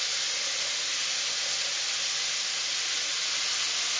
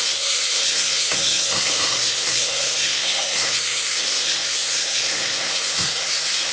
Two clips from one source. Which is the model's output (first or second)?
second